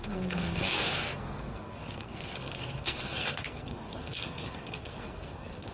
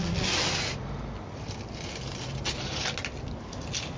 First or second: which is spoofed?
first